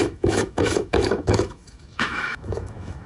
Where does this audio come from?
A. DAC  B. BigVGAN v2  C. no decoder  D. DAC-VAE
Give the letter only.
D